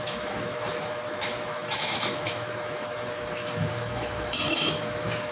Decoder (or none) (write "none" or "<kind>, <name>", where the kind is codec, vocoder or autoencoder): autoencoder, DAC-VAE